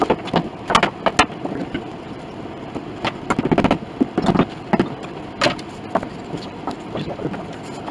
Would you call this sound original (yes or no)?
yes